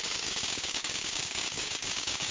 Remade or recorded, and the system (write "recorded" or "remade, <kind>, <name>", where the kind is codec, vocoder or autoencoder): remade, codec, DAC